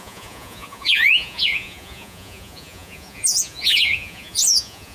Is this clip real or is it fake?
fake